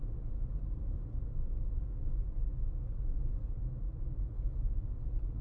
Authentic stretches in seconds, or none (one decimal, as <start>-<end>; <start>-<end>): 0.0-5.4

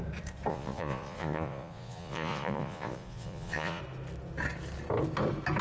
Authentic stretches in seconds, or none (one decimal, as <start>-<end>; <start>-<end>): 0.0-0.5; 3.8-5.6